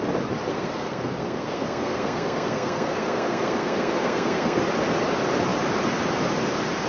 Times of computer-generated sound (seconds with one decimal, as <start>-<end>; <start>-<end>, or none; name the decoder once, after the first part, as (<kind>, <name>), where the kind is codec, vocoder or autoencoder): 0.5-4.6 (codec, SNAC)